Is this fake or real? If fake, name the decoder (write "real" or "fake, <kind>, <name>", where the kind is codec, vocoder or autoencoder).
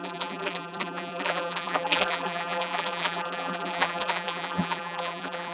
fake, vocoder, BigVGAN v2